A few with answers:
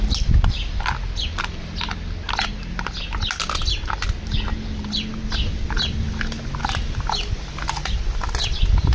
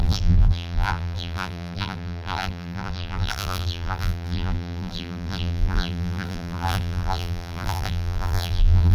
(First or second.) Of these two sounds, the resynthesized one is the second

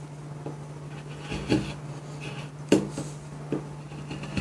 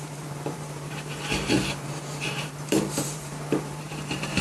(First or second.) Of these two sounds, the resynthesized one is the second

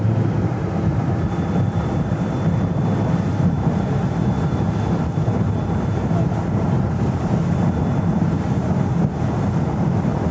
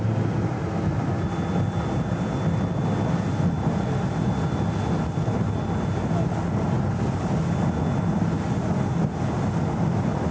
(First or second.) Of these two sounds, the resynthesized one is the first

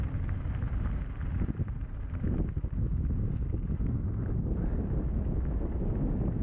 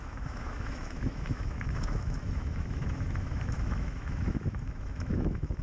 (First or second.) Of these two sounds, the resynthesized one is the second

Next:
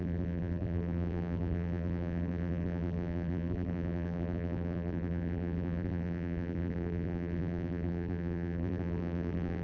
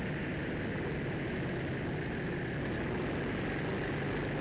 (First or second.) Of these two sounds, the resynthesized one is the first